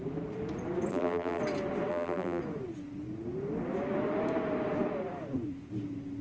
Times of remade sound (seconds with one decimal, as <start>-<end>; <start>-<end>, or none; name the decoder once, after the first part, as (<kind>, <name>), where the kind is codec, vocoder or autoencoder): 0.9-1.4 (vocoder, BigVGAN v2); 1.9-2.4